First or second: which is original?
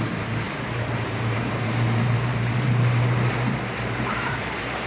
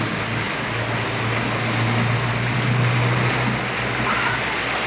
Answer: second